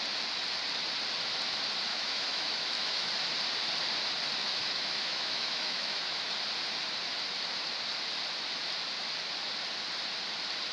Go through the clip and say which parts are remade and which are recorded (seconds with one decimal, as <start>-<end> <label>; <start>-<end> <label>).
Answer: 0.0-1.9 recorded; 1.9-3.1 remade; 3.1-4.4 recorded; 4.4-6.3 remade; 6.3-10.7 recorded